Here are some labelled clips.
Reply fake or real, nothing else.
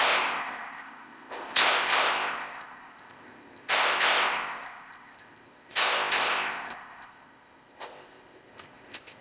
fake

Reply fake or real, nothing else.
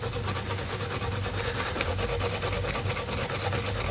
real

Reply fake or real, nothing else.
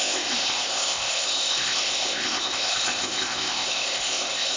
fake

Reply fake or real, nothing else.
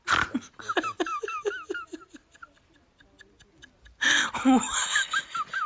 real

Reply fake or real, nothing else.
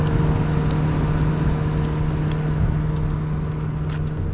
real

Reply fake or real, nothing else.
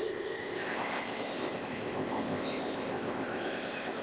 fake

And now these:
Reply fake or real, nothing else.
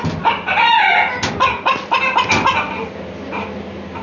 real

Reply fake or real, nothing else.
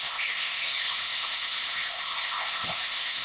fake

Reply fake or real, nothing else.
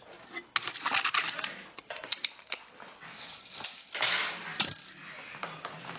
real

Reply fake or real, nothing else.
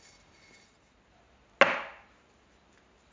real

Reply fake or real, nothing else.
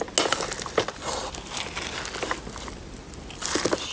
real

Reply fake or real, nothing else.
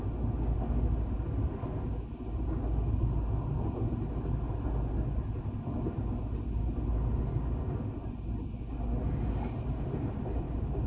real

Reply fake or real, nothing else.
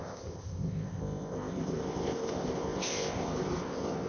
fake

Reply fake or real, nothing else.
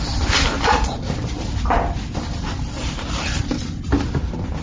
real